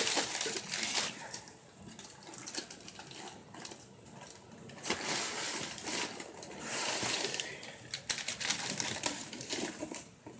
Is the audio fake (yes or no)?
no